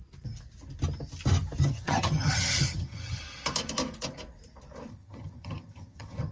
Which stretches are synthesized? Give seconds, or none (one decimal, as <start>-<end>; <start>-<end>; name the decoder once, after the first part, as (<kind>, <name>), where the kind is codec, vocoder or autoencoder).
1.6-3.2 (vocoder, HiFi-GAN); 4.9-6.3

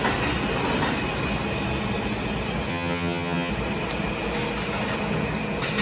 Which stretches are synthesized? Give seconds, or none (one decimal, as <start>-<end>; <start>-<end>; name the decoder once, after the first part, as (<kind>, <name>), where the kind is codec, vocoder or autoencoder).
2.7-3.5 (vocoder, HiFi-GAN)

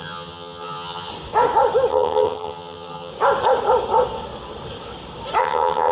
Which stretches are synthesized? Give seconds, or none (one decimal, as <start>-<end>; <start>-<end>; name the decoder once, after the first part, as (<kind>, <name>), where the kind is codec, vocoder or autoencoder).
0.0-1.1 (vocoder, HiFi-GAN); 1.9-3.1; 5.4-5.9